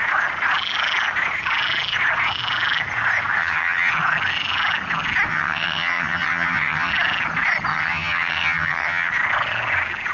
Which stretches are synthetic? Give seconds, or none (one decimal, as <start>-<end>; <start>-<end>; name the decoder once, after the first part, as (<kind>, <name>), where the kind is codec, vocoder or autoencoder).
3.4-3.9 (vocoder, HiFi-GAN); 5.3-6.9; 7.7-9.1